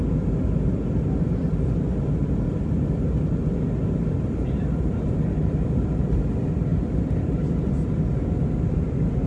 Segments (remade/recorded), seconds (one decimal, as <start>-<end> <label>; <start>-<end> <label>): 0.0-6.7 recorded; 6.7-7.3 remade; 7.3-9.3 recorded